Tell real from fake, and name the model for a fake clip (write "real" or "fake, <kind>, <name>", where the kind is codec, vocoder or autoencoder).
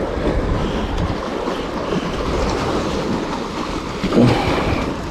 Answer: real